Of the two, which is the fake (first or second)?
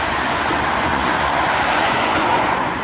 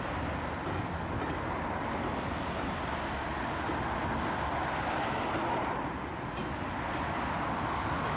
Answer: first